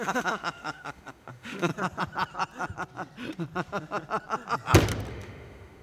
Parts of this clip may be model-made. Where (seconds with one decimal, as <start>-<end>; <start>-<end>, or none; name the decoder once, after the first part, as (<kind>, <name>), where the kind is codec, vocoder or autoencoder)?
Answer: 0.0-1.7 (autoencoder, DAC-VAE); 5.1-5.8

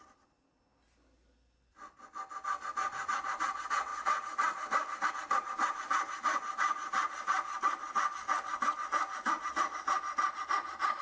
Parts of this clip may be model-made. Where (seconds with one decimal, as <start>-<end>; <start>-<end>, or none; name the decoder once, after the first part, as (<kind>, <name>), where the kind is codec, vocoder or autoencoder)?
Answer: 3.9-5.1 (vocoder, BigVGAN v2); 8.5-10.0

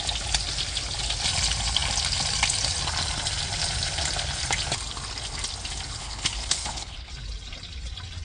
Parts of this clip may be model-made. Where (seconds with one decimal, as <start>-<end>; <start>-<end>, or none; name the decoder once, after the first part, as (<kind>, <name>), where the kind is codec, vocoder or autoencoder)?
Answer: 6.0-7.1 (codec, HILCodec)

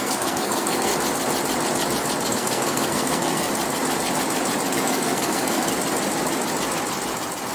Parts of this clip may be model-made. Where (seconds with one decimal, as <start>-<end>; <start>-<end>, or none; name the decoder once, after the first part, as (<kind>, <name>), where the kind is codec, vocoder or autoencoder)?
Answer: 0.0-0.9 (codec, SNAC); 2.3-3.5; 4.7-5.7